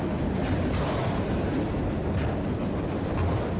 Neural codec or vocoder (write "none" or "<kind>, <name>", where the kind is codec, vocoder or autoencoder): none